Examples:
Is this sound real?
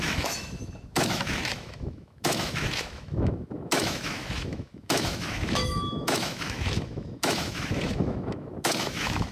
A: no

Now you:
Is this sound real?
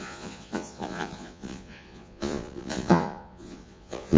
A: no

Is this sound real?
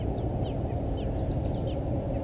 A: yes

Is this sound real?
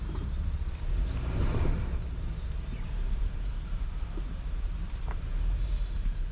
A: no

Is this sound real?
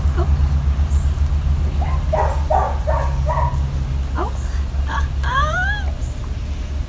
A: yes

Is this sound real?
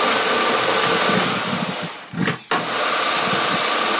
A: yes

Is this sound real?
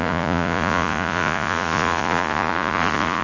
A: no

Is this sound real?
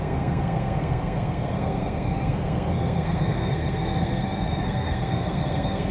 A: no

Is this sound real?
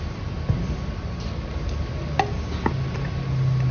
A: yes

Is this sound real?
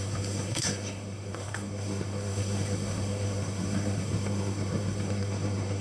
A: no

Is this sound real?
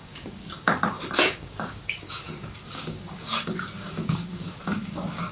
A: no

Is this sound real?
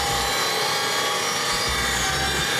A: yes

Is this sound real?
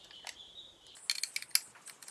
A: yes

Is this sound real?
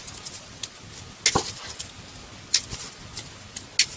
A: yes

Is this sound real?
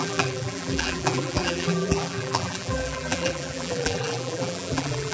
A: no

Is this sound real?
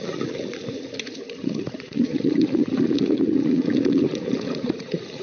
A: no